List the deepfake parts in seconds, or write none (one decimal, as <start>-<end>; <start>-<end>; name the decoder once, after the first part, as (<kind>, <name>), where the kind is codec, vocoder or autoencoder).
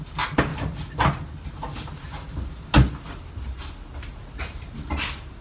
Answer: none